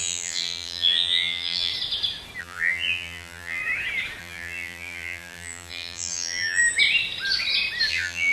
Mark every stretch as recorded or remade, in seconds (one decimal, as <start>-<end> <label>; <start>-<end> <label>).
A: 0.0-1.7 remade; 1.7-2.4 recorded; 2.4-3.6 remade; 3.6-4.2 recorded; 4.2-6.6 remade; 6.6-7.9 recorded; 7.9-8.3 remade